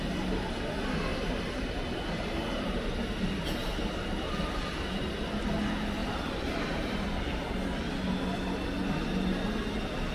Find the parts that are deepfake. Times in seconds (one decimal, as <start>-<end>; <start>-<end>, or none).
1.1-2.8; 3.6-4.3; 6.0-7.0